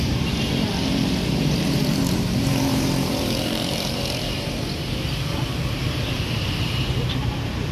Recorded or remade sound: remade